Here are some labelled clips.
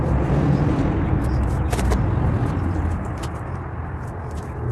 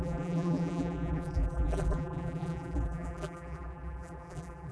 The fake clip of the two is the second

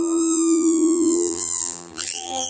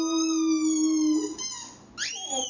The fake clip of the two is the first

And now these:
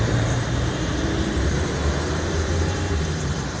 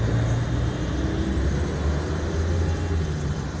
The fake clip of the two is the first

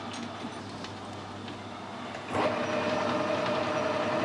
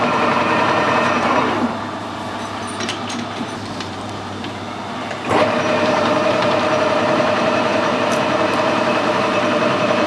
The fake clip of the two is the second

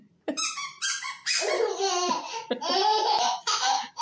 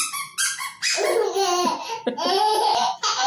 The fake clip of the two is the first